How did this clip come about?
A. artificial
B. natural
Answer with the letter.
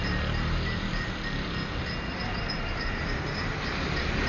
B